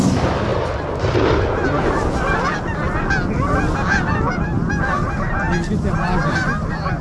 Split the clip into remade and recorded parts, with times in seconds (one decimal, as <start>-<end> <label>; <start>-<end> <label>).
0.0-7.0 recorded